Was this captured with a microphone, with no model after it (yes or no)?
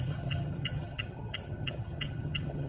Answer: no